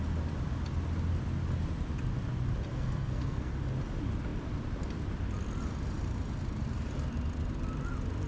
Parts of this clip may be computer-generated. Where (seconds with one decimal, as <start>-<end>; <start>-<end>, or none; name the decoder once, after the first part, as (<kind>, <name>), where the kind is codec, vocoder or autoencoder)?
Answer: 2.7-3.5 (codec, SNAC)